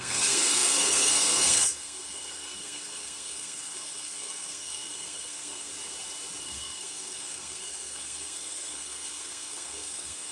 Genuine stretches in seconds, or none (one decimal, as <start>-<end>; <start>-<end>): 5.7-6.4